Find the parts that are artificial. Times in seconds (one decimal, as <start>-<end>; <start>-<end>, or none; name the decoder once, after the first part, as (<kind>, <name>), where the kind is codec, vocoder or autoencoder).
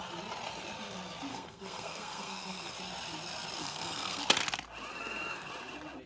1.3-2.7 (codec, SNAC); 3.6-4.2; 4.9-5.5